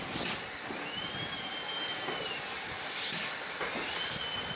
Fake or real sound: real